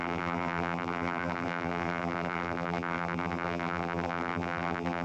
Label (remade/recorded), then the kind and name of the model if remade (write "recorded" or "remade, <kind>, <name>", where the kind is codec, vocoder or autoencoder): remade, vocoder, BigVGAN v2